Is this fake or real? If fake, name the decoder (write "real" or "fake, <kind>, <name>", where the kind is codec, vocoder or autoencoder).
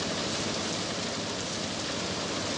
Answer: real